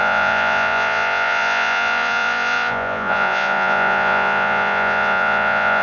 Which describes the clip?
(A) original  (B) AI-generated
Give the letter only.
B